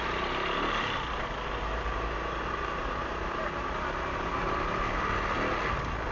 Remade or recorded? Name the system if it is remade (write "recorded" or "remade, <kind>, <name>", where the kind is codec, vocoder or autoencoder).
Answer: recorded